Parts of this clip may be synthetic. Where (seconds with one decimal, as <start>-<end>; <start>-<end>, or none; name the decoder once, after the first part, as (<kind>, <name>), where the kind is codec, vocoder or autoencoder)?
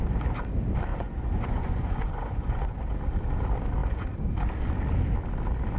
0.9-2.8 (vocoder, Vocos)